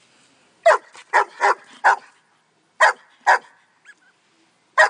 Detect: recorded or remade recorded